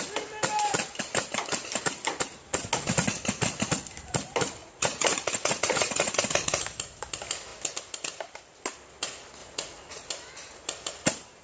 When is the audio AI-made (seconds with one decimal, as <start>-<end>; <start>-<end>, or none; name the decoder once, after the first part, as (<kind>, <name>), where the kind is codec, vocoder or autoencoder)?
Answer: 4.6-6.2 (vocoder, Vocos); 9.4-10.1